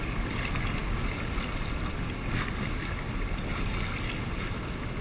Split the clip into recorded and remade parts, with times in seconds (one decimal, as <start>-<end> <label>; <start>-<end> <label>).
0.0-5.0 recorded